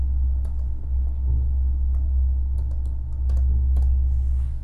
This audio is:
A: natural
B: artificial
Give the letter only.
A